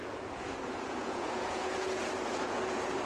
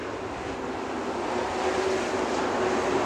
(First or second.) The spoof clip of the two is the first